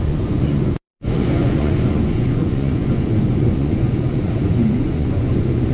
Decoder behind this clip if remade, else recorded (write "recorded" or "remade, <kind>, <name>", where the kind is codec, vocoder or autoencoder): remade, vocoder, Vocos